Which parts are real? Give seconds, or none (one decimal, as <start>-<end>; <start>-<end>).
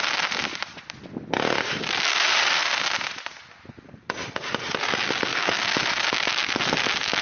0.0-5.3; 5.9-7.2